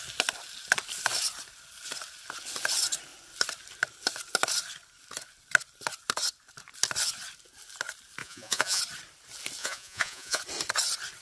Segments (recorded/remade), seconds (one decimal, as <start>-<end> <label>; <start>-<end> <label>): 0.0-8.2 recorded; 8.2-8.8 remade; 8.8-9.6 recorded; 9.6-10.4 remade; 10.4-11.2 recorded